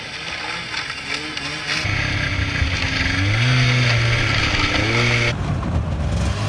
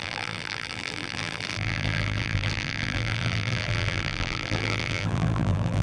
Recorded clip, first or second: first